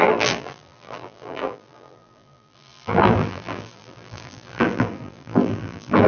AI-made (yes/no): yes